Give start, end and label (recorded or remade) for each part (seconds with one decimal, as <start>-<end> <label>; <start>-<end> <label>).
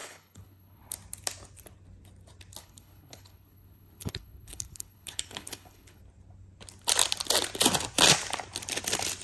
0.0-0.9 remade; 0.9-2.6 recorded; 2.6-6.0 remade; 6.0-9.2 recorded